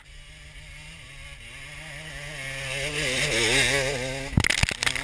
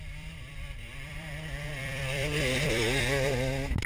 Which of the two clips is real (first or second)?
first